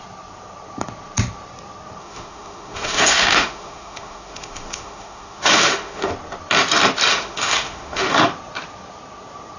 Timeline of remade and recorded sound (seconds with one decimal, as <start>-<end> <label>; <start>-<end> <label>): 0.0-2.0 recorded; 2.0-6.1 remade; 6.1-7.1 recorded; 7.1-8.2 remade; 8.2-9.6 recorded